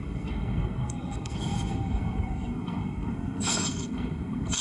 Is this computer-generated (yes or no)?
yes